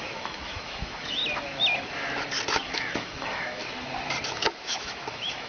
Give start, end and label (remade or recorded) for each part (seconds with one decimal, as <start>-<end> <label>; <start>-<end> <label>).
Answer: 0.0-1.2 remade; 1.2-2.5 recorded; 2.5-3.6 remade; 3.6-4.3 recorded; 4.3-5.5 remade